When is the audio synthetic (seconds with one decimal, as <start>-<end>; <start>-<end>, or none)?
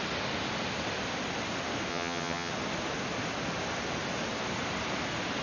1.9-2.5